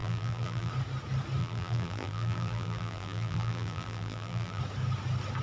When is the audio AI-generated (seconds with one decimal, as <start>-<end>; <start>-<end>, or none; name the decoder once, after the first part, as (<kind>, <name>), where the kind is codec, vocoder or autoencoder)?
0.0-0.7 (vocoder, BigVGAN v2); 1.4-4.6